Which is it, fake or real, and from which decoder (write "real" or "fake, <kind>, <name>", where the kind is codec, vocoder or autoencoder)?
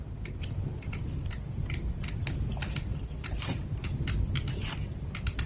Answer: real